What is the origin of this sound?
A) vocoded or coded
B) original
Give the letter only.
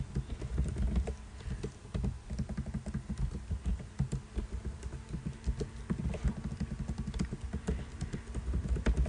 B